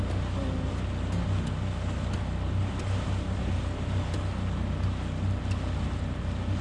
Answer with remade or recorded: recorded